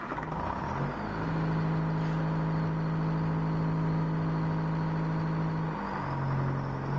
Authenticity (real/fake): real